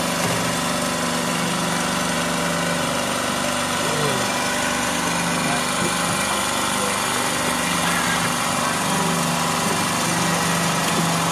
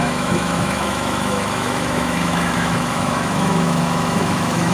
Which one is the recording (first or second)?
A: first